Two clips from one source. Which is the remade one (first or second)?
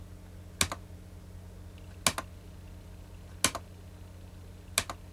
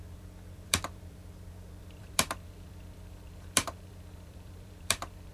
second